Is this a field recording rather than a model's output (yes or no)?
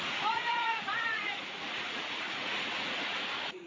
no